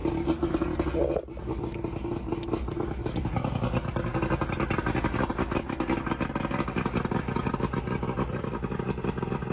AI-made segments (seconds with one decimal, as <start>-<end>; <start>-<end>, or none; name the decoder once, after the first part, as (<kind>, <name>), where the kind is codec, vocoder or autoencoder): none